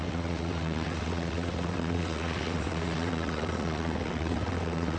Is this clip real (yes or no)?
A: no